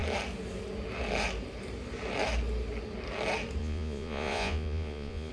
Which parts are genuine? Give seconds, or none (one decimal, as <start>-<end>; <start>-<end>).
0.0-3.6